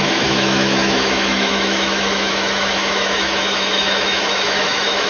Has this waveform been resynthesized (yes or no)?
yes